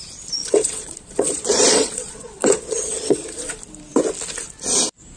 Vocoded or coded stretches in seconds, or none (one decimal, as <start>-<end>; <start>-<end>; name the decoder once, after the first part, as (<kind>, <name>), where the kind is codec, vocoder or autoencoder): 0.4-3.5 (vocoder, Vocos)